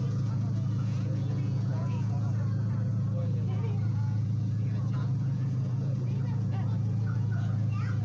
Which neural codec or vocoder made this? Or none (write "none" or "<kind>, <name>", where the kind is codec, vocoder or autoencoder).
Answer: vocoder, Vocos